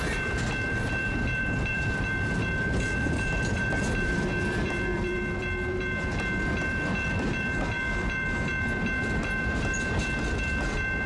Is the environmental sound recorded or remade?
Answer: remade